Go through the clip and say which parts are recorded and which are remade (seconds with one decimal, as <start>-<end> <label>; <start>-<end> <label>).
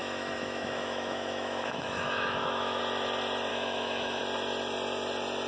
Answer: 0.0-2.8 remade; 2.8-3.5 recorded; 3.5-4.2 remade; 4.2-5.5 recorded